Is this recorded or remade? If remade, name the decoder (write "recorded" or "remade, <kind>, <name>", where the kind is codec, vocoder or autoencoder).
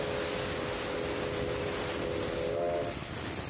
recorded